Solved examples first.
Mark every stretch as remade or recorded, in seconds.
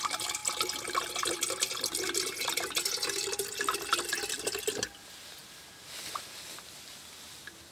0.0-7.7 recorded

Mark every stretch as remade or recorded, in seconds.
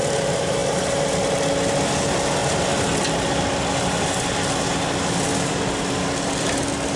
0.0-7.0 recorded